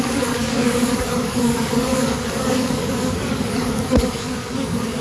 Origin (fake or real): fake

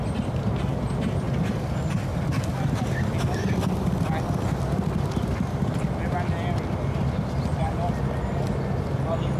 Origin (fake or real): real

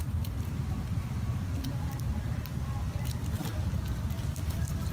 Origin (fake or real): real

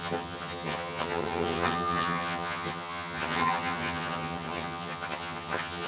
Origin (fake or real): fake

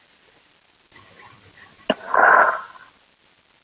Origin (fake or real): real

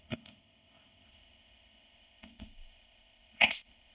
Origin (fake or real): fake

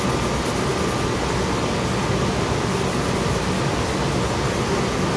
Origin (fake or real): real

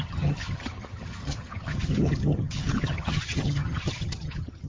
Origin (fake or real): fake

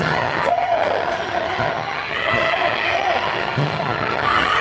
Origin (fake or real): fake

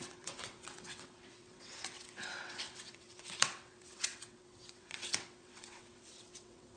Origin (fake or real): fake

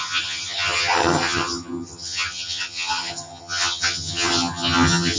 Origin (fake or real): fake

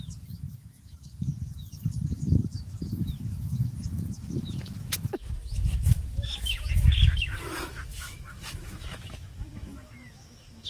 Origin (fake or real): fake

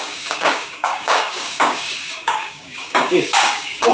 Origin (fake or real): fake